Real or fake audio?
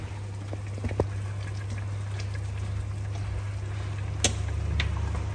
real